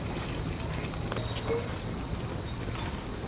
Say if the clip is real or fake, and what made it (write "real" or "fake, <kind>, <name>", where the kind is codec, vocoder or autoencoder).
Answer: real